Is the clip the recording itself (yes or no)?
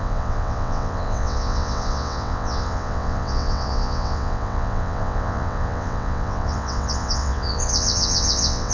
no